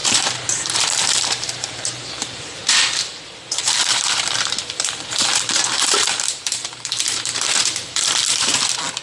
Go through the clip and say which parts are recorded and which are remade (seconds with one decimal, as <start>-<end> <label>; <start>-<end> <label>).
0.0-2.6 remade; 2.6-3.1 recorded; 3.1-8.2 remade; 8.2-9.0 recorded